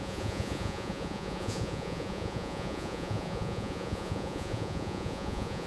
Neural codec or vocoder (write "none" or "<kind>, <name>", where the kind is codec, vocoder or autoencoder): vocoder, Vocos